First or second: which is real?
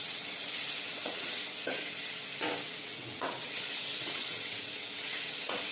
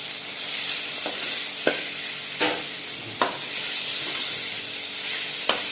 second